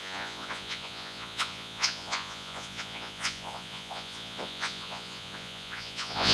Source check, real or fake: fake